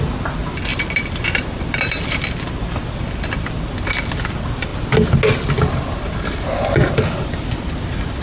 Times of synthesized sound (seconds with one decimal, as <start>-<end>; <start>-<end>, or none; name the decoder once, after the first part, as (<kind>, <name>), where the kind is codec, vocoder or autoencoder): 0.7-3.8 (vocoder, BigVGAN v2)